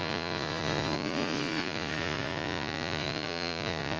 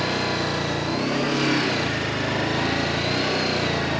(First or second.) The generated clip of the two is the first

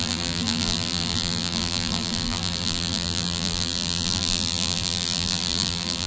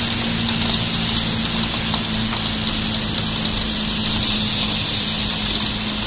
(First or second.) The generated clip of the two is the first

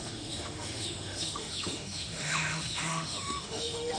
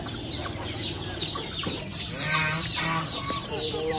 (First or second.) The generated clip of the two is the first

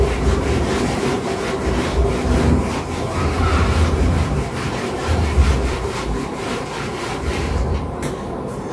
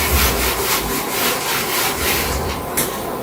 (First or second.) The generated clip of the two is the first